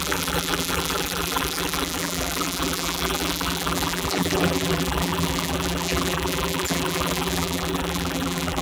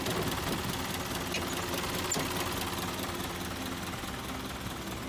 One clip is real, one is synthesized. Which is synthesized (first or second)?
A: first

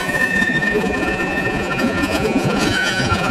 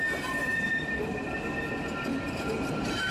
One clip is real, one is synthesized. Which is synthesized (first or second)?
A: first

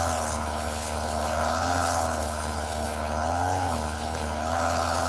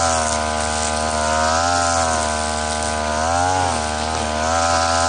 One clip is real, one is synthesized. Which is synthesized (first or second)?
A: first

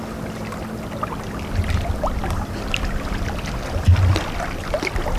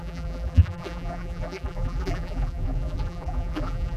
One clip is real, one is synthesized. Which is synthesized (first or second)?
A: second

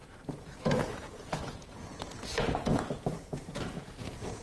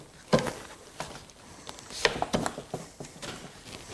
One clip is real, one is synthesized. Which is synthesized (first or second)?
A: first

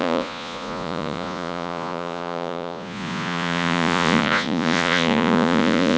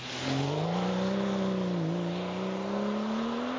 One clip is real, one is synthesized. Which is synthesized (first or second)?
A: first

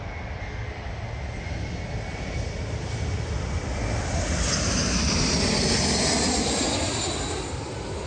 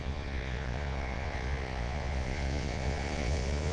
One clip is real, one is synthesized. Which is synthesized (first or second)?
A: second